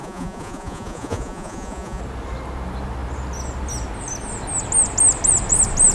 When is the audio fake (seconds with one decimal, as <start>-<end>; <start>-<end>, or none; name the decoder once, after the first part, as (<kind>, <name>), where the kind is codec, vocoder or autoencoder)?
0.0-2.0 (vocoder, Vocos)